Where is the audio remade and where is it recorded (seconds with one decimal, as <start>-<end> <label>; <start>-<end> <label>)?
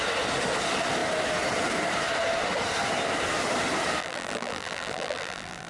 0.0-4.0 recorded; 4.0-5.7 remade